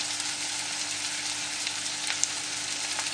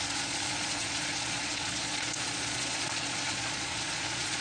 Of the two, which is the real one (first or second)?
first